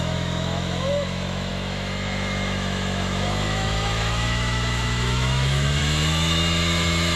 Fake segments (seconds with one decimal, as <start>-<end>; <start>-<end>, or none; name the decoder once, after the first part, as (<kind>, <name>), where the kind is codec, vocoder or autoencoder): 0.0-7.2 (autoencoder, DAC-VAE)